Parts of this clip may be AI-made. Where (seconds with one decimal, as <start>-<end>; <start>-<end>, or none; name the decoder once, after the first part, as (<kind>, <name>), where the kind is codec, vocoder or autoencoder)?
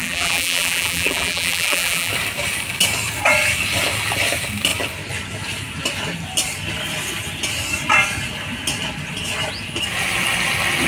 0.0-2.1 (vocoder, BigVGAN v2)